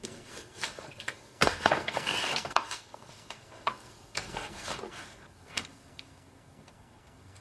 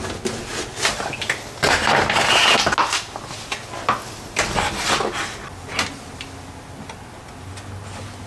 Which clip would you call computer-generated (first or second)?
first